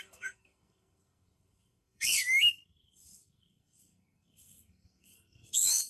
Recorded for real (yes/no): no